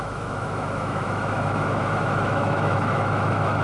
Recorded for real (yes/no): no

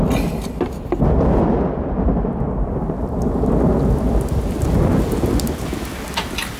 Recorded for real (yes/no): yes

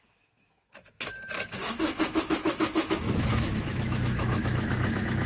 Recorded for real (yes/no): no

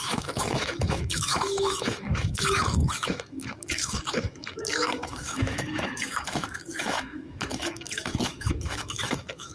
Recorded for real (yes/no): no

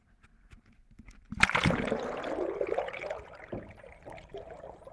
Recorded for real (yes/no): yes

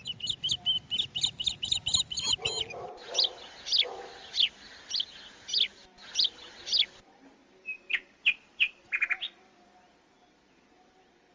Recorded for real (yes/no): yes